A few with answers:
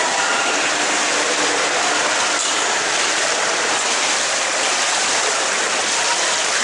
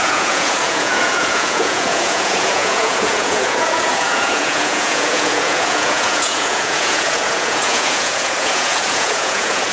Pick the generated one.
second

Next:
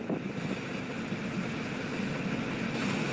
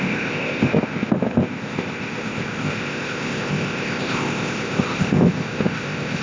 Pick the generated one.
second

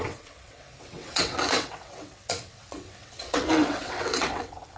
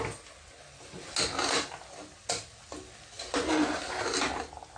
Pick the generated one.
first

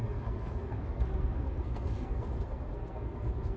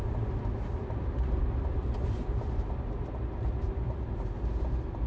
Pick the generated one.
first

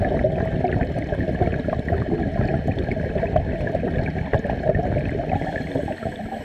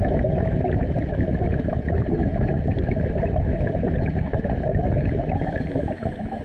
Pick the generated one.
second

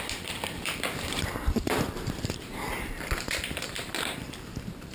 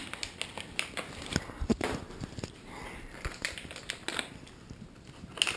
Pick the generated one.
first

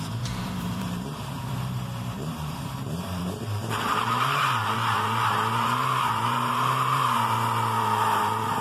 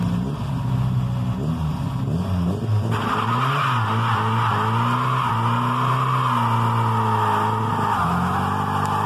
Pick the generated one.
first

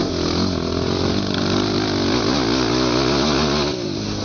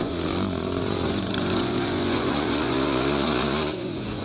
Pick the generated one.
second